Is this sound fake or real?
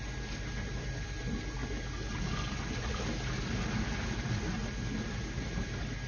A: real